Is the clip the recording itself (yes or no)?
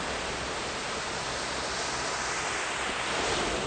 yes